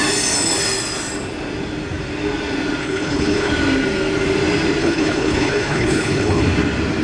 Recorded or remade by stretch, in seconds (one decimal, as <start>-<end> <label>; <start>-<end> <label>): 0.0-2.8 recorded; 2.8-3.5 remade; 3.5-4.8 recorded; 4.8-6.4 remade; 6.4-7.0 recorded